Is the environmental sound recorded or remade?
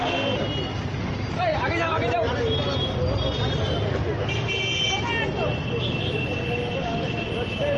recorded